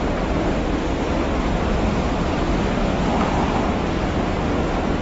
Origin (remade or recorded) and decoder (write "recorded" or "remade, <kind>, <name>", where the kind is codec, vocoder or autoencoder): recorded